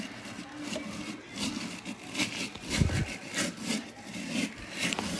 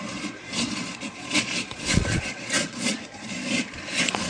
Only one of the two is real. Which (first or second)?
first